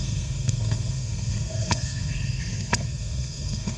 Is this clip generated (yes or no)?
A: yes